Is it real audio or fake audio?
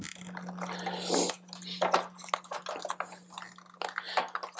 real